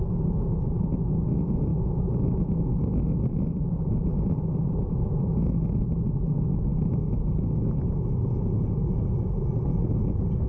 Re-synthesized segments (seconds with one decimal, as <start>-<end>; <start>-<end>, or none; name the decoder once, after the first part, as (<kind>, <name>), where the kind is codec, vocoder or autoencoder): 1.7-3.0 (autoencoder, DAC-VAE)

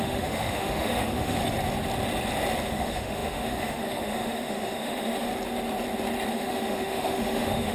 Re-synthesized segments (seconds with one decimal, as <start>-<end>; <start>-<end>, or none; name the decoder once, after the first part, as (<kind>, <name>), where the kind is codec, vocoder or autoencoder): 0.0-1.4 (autoencoder, DAC-VAE); 2.7-5.3; 6.3-7.7